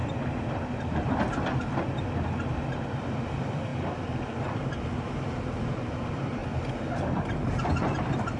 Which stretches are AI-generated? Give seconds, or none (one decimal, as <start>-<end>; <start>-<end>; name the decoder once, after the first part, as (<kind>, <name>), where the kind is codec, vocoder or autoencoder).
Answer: 2.3-3.7 (vocoder, BigVGAN v2); 4.9-6.4; 7.3-8.4